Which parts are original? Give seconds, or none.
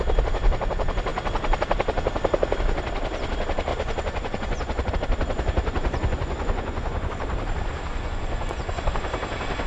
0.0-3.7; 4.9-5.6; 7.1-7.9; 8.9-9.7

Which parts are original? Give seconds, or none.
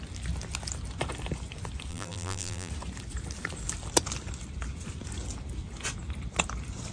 0.0-1.9; 2.7-6.9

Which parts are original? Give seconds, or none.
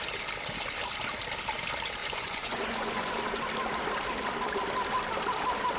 0.0-2.0; 3.1-5.8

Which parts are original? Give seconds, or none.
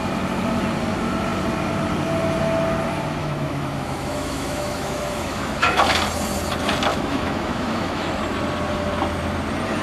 0.0-3.2; 5.8-6.9; 8.2-9.8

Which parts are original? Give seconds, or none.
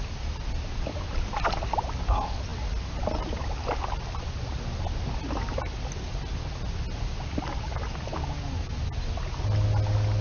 0.0-10.2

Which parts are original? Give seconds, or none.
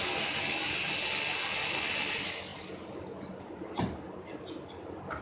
0.0-5.2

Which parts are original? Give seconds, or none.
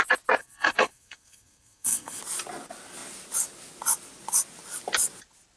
0.0-0.4; 2.2-5.6